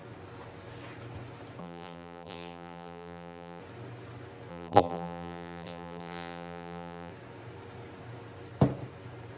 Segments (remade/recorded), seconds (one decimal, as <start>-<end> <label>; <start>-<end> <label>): 0.0-1.6 recorded; 1.6-3.6 remade; 3.6-4.5 recorded; 4.5-7.1 remade; 7.1-9.4 recorded